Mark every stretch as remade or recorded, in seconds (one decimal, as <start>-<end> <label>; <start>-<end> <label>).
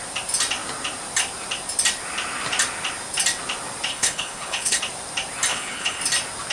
0.0-3.9 recorded; 3.9-4.8 remade; 4.8-5.5 recorded; 5.5-6.0 remade; 6.0-6.5 recorded